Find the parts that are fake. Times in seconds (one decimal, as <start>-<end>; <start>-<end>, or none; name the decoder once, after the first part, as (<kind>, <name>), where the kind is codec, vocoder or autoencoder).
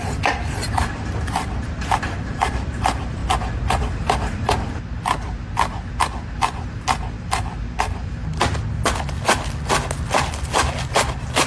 none